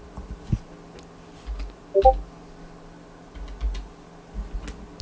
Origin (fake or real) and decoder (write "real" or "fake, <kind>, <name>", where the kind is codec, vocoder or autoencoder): real